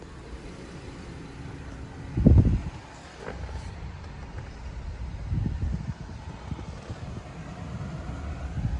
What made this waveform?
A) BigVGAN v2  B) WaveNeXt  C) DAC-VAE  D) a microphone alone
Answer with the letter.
D